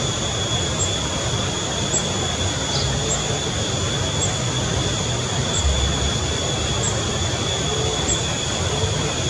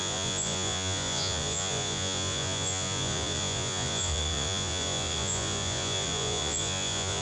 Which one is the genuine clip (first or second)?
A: first